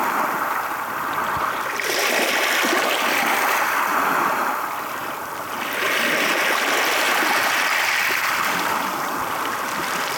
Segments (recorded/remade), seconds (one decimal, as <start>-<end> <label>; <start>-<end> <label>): 0.0-2.3 remade; 2.3-4.4 recorded; 4.4-5.0 remade; 5.0-10.2 recorded